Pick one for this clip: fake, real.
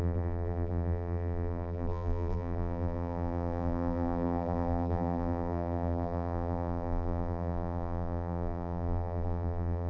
fake